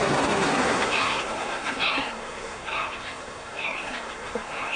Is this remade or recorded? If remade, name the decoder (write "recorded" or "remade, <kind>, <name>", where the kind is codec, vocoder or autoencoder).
remade, codec, SNAC